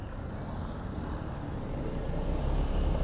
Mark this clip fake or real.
fake